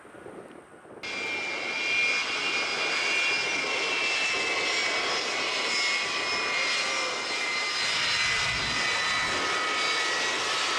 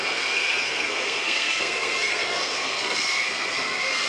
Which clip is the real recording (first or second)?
first